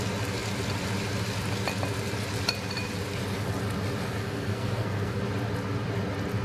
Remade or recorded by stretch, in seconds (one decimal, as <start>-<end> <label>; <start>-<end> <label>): 0.0-4.2 recorded; 4.2-5.2 remade; 5.2-6.4 recorded